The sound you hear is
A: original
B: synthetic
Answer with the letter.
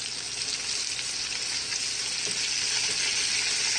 A